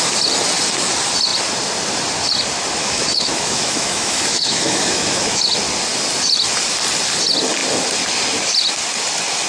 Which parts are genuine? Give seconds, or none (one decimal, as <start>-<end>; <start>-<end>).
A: 0.0-2.8; 5.4-9.5